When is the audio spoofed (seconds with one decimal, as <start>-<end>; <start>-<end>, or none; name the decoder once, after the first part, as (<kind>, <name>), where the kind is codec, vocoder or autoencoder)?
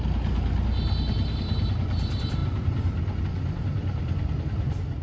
none